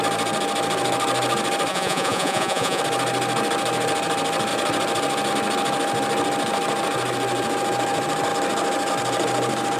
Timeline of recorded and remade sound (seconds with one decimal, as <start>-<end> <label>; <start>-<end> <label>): 0.0-1.7 recorded; 1.7-2.8 remade; 2.8-9.8 recorded